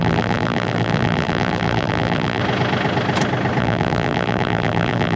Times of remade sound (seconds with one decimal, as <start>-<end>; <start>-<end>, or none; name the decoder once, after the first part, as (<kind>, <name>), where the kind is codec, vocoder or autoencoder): 0.0-2.4 (vocoder, BigVGAN v2); 3.6-5.2